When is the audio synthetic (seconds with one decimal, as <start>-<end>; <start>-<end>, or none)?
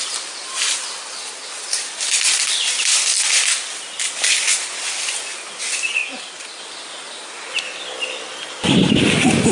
none